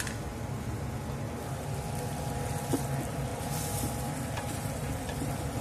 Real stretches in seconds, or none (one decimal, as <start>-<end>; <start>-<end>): 0.0-3.3

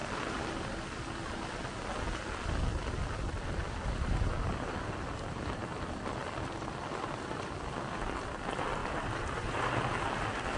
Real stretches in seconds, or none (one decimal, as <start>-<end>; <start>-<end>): 0.0-8.8; 9.9-10.6

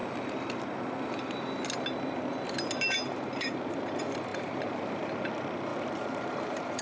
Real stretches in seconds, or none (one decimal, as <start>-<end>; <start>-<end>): 0.0-3.0

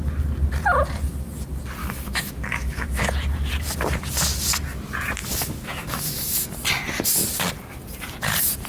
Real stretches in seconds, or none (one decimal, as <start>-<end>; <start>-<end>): 0.0-1.8; 3.1-5.2; 6.5-8.7

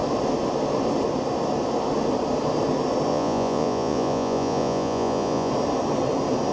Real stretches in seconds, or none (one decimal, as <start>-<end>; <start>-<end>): 0.0-3.1; 5.5-6.5